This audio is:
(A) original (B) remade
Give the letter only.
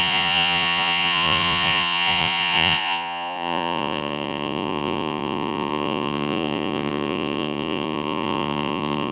B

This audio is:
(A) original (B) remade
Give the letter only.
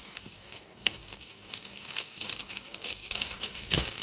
B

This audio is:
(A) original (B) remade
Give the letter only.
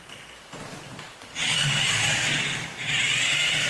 A